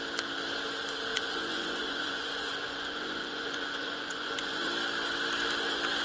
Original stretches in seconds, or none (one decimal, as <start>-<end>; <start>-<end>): 0.0-1.1; 4.7-6.0

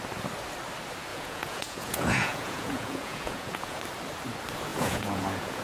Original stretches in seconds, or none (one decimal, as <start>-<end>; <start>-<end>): 0.0-1.1; 3.8-4.7

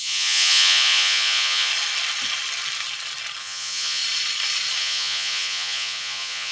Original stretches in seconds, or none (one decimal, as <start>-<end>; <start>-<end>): 1.7-3.4; 4.0-4.8

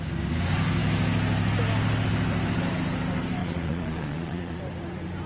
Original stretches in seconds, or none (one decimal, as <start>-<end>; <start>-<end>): 0.0-3.4; 4.6-5.3

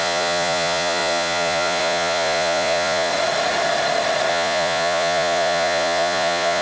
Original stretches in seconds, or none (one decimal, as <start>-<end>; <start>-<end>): 3.1-4.3

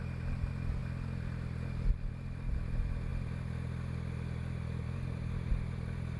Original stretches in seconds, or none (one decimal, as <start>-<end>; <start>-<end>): 0.0-6.2